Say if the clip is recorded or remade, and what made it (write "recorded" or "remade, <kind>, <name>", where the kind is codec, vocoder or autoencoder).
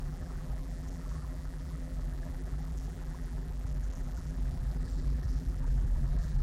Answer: remade, vocoder, BigVGAN v2